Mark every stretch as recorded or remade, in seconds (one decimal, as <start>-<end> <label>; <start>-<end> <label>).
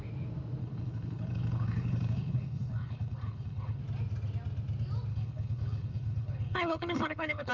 0.0-0.6 recorded; 0.6-3.8 remade; 3.8-5.1 recorded; 5.1-7.5 remade